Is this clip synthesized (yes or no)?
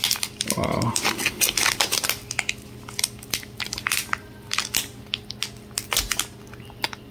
no